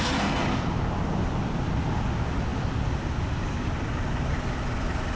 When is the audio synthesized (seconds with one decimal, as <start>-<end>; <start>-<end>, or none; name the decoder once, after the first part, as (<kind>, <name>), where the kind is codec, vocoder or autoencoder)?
none